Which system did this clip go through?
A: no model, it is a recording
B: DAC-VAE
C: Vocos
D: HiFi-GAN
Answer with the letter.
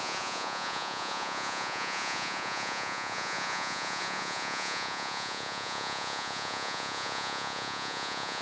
C